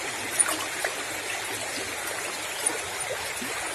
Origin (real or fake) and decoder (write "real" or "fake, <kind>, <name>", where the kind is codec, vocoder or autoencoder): real